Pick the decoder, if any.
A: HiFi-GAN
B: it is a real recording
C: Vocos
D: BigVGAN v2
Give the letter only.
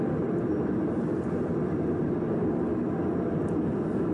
D